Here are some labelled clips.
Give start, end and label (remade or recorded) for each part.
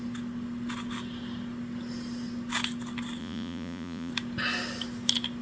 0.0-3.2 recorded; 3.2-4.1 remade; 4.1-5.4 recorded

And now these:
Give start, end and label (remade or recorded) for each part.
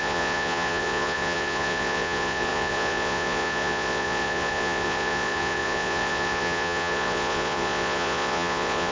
0.0-8.9 remade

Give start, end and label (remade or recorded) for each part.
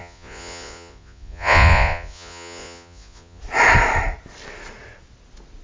0.0-3.4 remade; 3.4-5.6 recorded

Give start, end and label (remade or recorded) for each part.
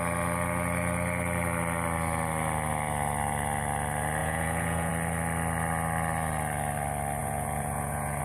0.0-4.2 recorded; 4.2-4.9 remade; 4.9-7.2 recorded; 7.2-8.2 remade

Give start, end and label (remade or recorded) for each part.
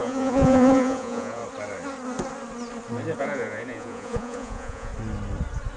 0.0-1.4 remade; 1.4-3.2 recorded; 3.2-4.9 remade; 4.9-5.8 recorded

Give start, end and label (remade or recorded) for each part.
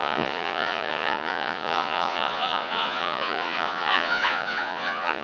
0.0-5.2 remade